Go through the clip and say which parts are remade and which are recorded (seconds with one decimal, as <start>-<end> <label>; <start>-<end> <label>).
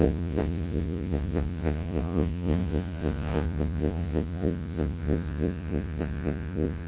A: 0.0-6.9 remade